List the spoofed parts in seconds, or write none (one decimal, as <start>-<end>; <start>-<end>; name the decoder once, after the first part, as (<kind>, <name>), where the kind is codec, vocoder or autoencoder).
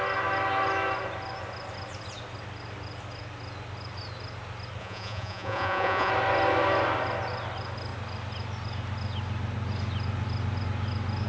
4.8-6.1 (vocoder, Vocos)